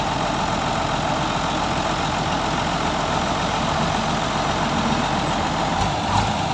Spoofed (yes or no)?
no